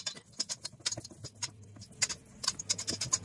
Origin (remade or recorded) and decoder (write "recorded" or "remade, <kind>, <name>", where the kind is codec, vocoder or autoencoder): recorded